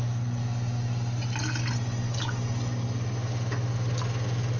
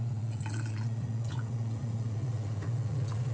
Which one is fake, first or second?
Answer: second